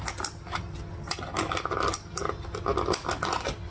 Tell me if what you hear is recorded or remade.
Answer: recorded